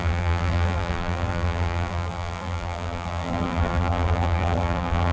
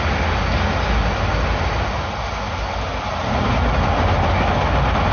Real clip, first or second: second